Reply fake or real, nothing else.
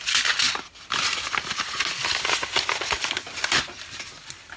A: real